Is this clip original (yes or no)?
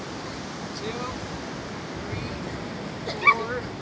yes